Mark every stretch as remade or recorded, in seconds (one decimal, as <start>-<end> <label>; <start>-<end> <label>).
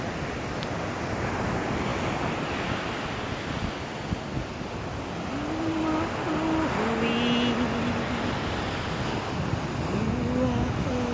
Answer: 0.0-11.1 recorded